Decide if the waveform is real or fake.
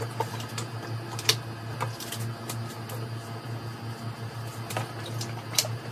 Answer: real